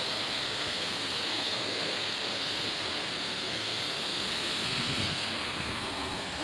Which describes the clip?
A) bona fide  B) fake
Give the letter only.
B